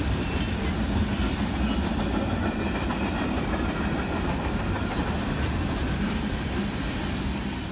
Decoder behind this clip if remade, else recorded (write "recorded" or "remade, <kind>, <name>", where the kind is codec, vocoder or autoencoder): recorded